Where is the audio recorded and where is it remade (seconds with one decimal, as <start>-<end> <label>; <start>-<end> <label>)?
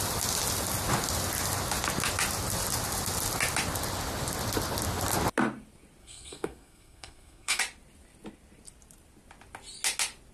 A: 0.0-6.0 recorded; 6.0-7.6 remade; 7.6-10.3 recorded